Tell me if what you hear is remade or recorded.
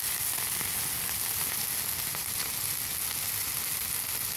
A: recorded